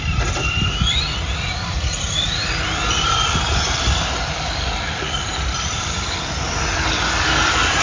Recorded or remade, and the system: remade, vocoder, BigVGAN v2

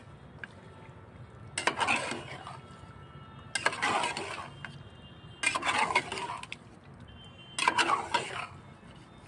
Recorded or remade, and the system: recorded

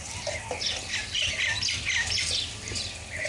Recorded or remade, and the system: recorded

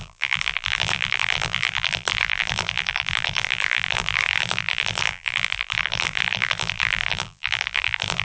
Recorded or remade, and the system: remade, vocoder, BigVGAN v2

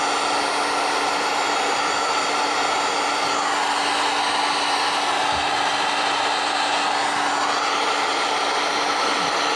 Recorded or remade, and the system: recorded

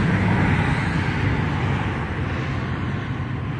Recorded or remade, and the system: recorded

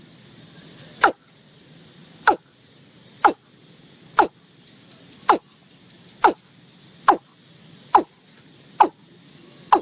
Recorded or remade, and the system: recorded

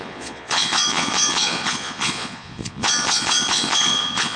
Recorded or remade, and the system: remade, vocoder, Vocos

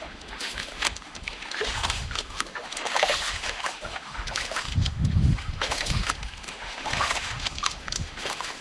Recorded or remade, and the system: remade, autoencoder, DAC-VAE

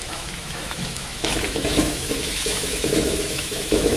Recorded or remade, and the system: remade, autoencoder, DAC-VAE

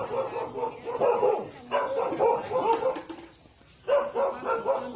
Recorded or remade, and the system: recorded